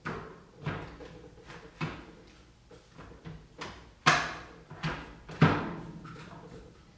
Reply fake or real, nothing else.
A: real